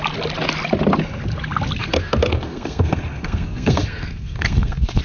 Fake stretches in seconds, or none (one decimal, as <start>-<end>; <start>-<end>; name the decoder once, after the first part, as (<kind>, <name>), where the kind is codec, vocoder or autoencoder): 1.8-5.0 (codec, SNAC)